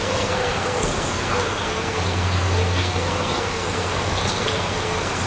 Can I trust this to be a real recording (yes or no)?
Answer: no